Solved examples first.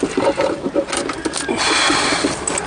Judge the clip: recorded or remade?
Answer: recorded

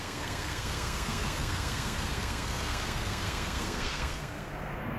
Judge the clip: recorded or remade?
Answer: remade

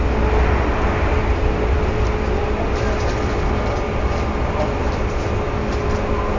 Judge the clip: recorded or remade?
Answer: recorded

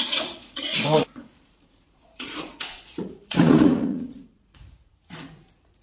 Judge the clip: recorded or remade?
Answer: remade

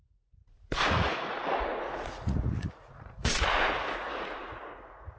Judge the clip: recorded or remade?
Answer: remade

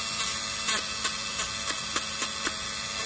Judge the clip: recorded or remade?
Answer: recorded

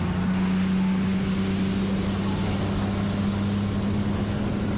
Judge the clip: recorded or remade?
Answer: recorded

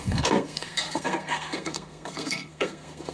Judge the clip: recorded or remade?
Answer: remade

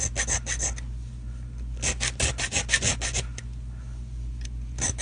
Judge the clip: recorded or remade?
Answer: recorded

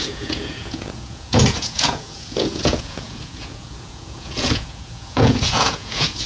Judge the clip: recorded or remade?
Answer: remade